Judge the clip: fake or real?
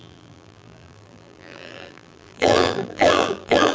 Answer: fake